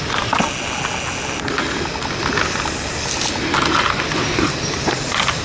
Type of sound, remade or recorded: recorded